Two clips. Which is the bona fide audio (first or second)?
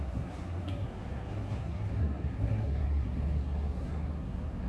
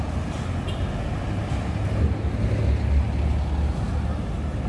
second